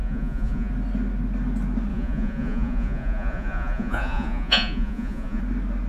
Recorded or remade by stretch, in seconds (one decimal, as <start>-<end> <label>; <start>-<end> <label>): 0.0-0.7 remade; 0.7-1.9 recorded; 1.9-5.4 remade; 5.4-5.9 recorded